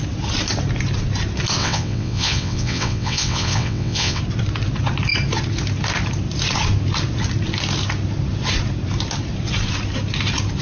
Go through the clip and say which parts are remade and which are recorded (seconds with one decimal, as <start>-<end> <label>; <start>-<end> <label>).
0.0-1.6 recorded; 1.6-4.2 remade; 4.2-10.6 recorded